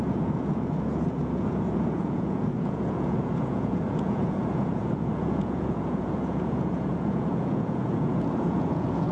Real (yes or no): no